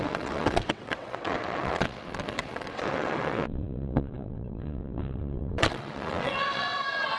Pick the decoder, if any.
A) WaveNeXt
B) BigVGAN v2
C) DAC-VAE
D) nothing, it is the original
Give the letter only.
A